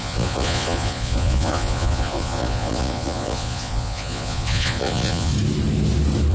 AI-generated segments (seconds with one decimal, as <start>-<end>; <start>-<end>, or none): 0.0-5.3